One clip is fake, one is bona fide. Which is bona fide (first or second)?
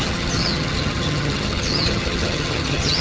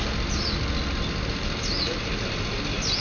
second